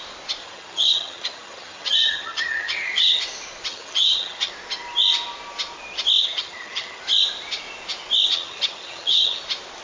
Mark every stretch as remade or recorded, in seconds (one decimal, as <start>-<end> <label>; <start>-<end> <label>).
0.0-0.4 recorded; 0.4-3.2 remade; 3.2-3.7 recorded; 3.7-4.5 remade; 4.5-6.2 recorded; 6.2-7.0 remade; 7.0-8.3 recorded; 8.3-9.4 remade; 9.4-9.8 recorded

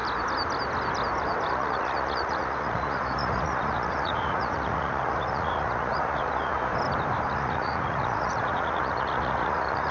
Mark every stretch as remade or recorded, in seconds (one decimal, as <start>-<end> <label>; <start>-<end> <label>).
0.0-1.5 recorded; 1.5-6.7 remade; 6.7-7.3 recorded; 7.3-9.9 remade

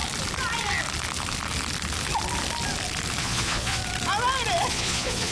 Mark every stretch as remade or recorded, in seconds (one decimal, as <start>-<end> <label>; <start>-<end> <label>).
0.0-3.2 recorded; 3.2-3.8 remade; 3.8-4.7 recorded; 4.7-5.3 remade

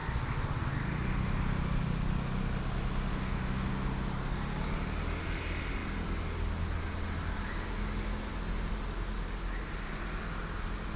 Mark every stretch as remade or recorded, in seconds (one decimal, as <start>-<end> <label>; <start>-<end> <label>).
0.0-3.1 recorded; 3.1-3.7 remade; 3.7-11.0 recorded

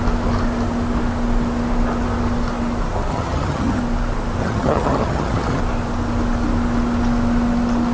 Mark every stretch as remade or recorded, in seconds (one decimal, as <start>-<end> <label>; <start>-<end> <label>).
0.0-3.1 recorded; 3.1-3.8 remade; 3.8-4.4 recorded; 4.4-5.6 remade; 5.6-7.9 recorded

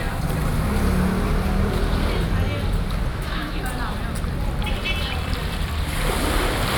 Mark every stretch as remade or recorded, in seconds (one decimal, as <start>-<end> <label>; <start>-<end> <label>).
0.0-3.1 recorded; 3.1-3.6 remade; 3.6-6.8 recorded